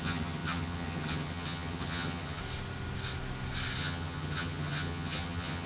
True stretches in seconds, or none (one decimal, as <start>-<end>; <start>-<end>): 2.4-3.8